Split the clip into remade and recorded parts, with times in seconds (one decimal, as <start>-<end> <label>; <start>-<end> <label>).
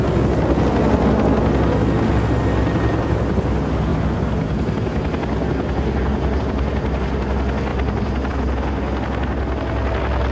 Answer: 0.0-10.3 recorded